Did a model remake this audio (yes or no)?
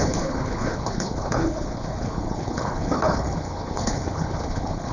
yes